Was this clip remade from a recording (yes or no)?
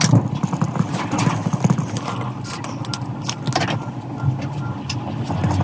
no